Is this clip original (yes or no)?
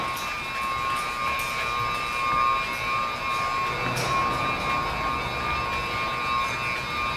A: yes